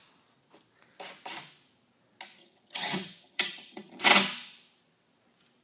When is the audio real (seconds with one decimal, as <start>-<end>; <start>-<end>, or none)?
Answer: 0.0-2.4; 4.0-5.6